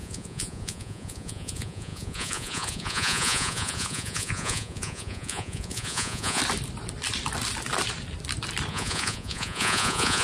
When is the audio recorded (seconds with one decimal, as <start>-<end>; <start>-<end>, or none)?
6.4-8.7